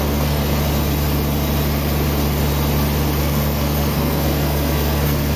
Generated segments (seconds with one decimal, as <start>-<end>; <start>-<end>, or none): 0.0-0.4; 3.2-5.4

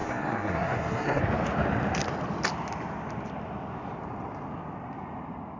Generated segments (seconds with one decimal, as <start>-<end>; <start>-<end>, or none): 0.0-1.2

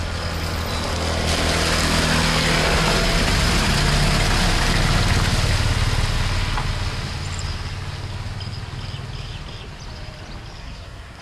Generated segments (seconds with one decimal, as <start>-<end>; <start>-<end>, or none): 10.6-11.2

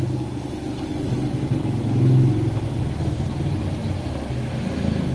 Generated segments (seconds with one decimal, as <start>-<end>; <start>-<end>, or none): none

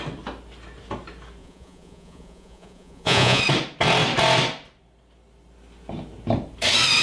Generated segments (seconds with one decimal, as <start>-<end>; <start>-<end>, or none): 1.4-3.4

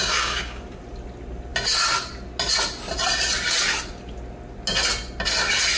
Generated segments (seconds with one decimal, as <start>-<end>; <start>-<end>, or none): 0.0-0.6

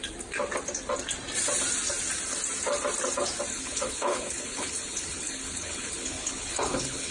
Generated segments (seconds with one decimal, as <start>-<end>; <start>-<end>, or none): 3.5-7.1